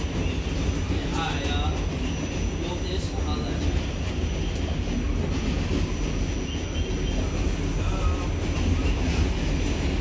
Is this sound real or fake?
real